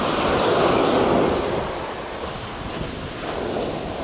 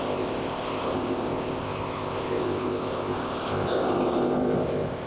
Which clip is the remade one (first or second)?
second